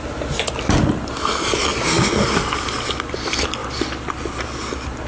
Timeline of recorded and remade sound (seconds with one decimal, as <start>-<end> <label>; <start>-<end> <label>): 0.0-5.1 recorded